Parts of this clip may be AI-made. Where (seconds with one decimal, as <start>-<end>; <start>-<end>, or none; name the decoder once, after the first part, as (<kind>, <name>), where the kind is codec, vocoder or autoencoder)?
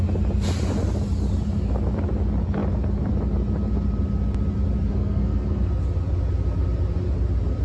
4.9-5.7 (codec, SNAC)